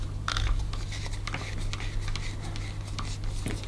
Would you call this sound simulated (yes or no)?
no